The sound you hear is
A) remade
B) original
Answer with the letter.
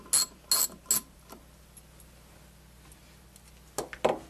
B